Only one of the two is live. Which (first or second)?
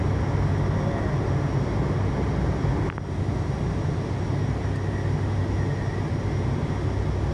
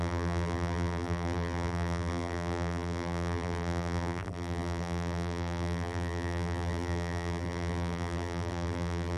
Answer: first